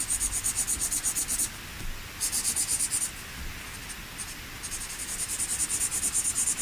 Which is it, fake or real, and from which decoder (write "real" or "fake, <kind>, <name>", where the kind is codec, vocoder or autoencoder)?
real